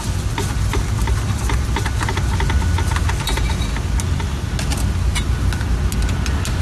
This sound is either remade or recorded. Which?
recorded